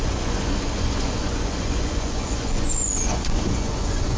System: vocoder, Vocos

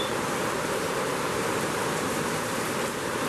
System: vocoder, BigVGAN v2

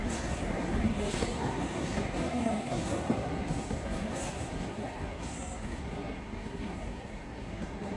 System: codec, SNAC